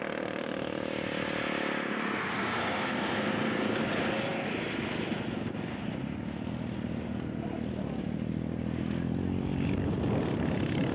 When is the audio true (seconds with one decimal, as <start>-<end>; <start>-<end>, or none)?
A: 0.0-10.9

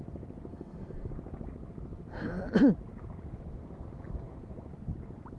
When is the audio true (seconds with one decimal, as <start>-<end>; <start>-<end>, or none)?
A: 0.0-0.5; 1.1-5.4

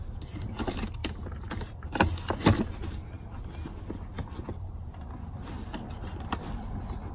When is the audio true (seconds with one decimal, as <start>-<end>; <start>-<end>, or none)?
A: 0.0-7.1

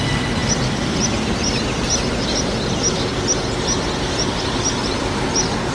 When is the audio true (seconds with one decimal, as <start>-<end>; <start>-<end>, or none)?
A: 0.0-5.7

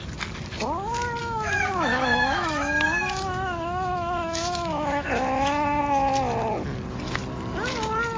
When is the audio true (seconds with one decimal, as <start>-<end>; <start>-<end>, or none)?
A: 0.0-1.2; 5.8-8.2